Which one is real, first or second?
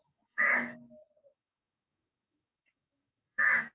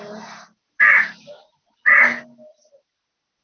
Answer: second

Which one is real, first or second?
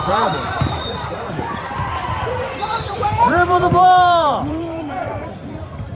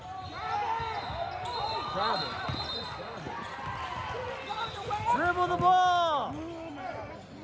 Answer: second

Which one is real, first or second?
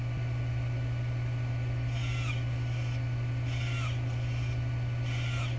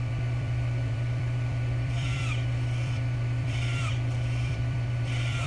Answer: first